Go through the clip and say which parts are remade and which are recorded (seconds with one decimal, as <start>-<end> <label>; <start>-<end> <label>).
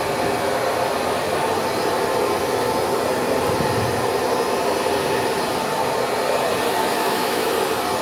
0.0-6.8 recorded; 6.8-7.5 remade; 7.5-8.0 recorded